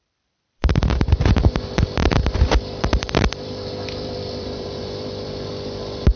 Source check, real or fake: fake